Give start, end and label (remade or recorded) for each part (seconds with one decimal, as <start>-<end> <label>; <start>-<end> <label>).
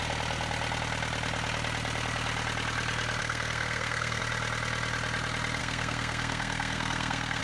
0.0-3.2 recorded; 3.2-4.2 remade; 4.2-5.6 recorded; 5.6-7.4 remade